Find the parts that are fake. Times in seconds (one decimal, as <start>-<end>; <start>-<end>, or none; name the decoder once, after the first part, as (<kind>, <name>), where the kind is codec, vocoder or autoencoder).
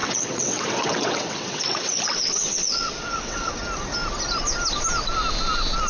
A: 0.0-3.5 (vocoder, WaveNeXt)